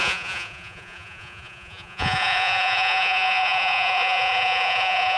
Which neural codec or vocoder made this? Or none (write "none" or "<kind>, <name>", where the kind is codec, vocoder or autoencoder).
vocoder, Vocos